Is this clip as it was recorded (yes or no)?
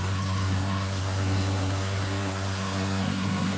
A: no